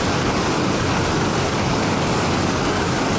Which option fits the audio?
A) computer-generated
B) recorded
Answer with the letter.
A